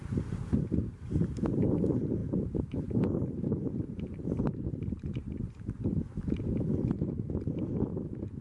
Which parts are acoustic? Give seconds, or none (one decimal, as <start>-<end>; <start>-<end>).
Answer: 5.9-8.4